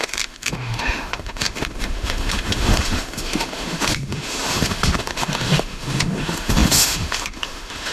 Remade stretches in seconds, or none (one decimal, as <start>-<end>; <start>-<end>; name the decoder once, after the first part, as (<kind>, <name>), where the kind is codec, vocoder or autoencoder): 0.0-7.9 (autoencoder, DAC-VAE)